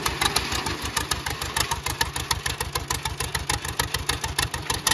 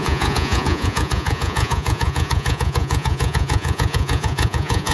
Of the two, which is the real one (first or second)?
first